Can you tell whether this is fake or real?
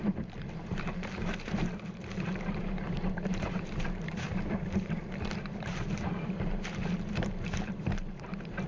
fake